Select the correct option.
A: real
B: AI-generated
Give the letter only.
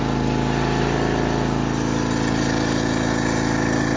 A